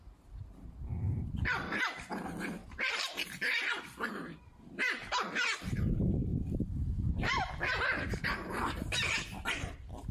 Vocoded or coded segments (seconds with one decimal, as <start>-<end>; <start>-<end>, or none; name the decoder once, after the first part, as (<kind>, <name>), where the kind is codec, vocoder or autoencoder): 0.0-10.1 (vocoder, BigVGAN v2)